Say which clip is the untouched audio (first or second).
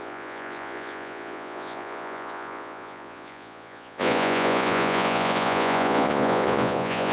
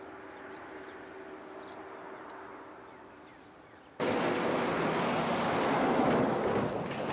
second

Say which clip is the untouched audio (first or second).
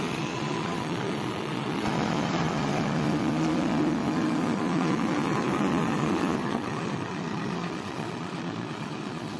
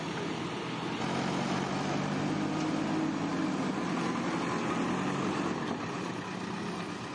second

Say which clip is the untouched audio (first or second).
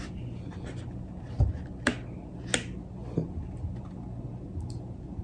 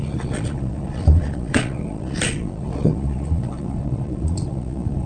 first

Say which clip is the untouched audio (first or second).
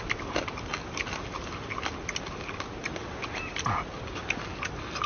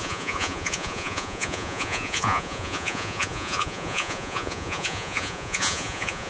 first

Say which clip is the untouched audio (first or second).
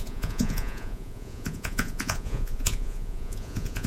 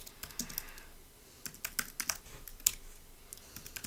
second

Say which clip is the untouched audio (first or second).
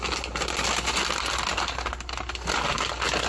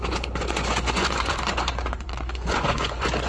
first